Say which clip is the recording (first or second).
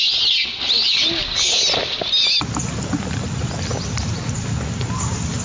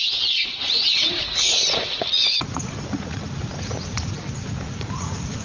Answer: first